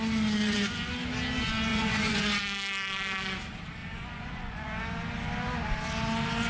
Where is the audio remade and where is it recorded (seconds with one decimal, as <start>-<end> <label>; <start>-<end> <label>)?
0.0-0.4 recorded; 0.4-0.9 remade; 0.9-1.7 recorded; 1.7-2.4 remade; 2.4-3.8 recorded; 3.8-4.8 remade; 4.8-6.5 recorded